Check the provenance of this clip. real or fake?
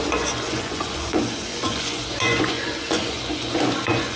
fake